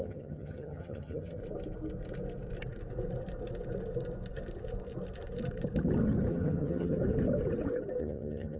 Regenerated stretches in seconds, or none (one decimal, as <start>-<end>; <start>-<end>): 0.0-1.4; 6.3-7.0; 8.0-8.6

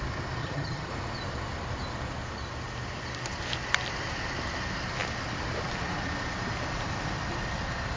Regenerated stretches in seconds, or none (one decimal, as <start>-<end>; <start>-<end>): 0.4-0.9

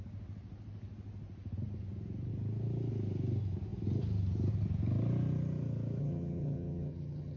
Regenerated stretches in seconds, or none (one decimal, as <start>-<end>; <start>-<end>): 6.0-7.4

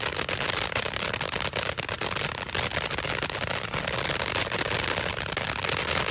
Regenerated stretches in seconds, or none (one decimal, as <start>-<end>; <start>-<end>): none

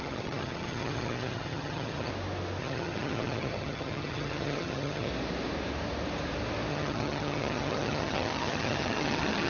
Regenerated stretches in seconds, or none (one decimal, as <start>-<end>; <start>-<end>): 0.0-2.1; 2.6-5.1; 6.7-9.5

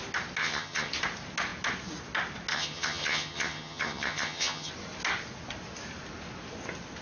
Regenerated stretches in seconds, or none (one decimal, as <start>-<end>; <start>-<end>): 0.4-0.9; 2.5-4.7

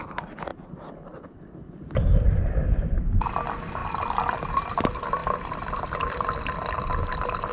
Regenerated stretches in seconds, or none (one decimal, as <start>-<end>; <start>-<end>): none